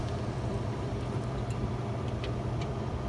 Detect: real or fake fake